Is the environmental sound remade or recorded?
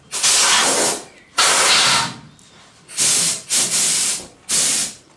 recorded